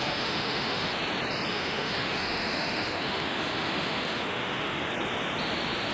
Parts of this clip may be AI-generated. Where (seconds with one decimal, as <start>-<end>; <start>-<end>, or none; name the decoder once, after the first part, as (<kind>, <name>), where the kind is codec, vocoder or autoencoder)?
0.0-0.9 (autoencoder, DAC-VAE); 1.5-4.9